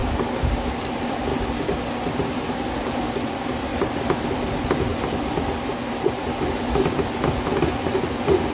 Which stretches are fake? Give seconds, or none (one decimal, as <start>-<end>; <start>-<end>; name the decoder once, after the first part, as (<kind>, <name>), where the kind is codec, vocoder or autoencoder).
0.0-0.7 (codec, DAC)